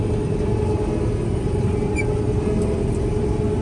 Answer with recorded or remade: recorded